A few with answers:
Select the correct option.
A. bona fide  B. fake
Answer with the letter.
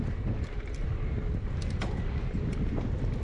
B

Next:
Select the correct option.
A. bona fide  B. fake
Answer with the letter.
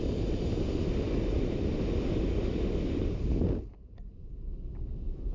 A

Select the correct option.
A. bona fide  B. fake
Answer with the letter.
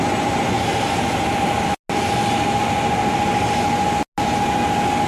A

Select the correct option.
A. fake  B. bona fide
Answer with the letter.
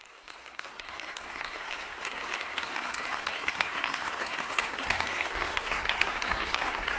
A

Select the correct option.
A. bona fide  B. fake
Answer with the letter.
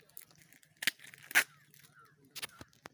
A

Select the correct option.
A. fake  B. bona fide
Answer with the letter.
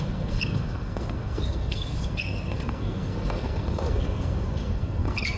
A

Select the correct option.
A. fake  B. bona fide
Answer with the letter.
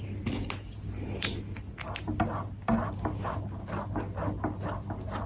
B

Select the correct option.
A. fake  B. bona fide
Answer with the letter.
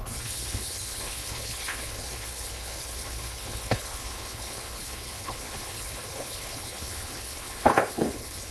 A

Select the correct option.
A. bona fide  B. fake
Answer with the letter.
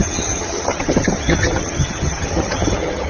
B